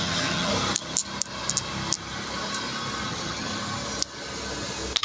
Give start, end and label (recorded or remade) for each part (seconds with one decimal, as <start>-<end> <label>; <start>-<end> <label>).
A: 0.0-0.5 remade; 0.5-3.0 recorded; 3.0-3.5 remade; 3.5-5.0 recorded